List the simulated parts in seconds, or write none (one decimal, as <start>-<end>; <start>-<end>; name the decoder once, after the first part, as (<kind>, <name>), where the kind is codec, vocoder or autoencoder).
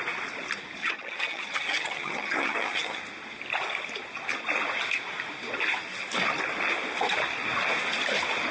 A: 0.8-3.0 (vocoder, HiFi-GAN)